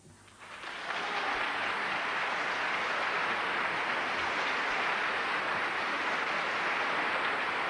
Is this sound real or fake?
real